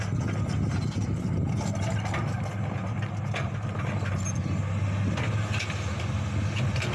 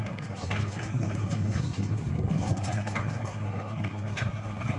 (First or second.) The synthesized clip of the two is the second